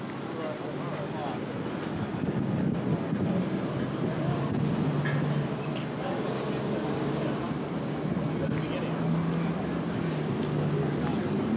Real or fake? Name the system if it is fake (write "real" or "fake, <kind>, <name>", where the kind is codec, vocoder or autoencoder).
real